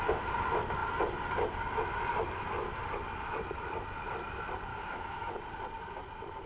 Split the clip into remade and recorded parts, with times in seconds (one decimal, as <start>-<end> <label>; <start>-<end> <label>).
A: 0.0-4.7 recorded; 4.7-5.3 remade; 5.3-6.5 recorded